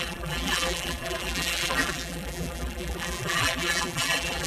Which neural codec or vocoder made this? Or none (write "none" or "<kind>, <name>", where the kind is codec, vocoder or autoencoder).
vocoder, BigVGAN v2